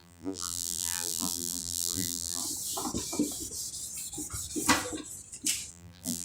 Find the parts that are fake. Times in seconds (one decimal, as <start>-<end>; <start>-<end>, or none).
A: 0.0-2.4; 5.7-6.2